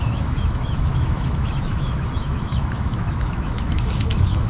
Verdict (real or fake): fake